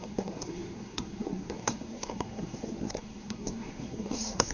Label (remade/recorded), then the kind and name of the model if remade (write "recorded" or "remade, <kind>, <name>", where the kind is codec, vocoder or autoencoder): remade, codec, SNAC